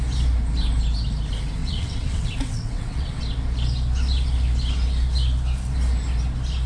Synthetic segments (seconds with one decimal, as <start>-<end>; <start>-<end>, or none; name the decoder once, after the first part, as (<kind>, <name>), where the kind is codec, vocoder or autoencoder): 1.6-3.2 (vocoder, WaveNeXt)